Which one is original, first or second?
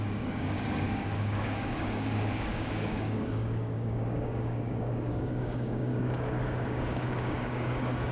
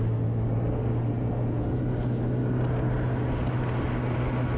second